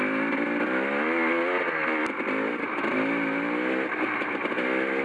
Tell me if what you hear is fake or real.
real